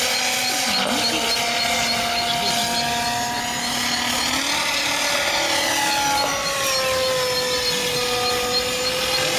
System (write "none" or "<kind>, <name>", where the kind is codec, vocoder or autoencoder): none